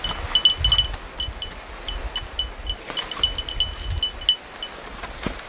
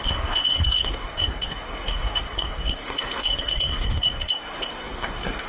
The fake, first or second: second